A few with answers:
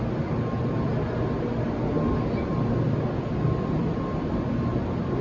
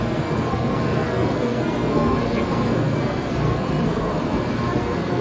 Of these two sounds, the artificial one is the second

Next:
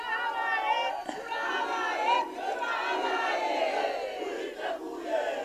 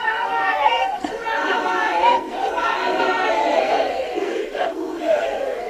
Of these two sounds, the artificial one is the second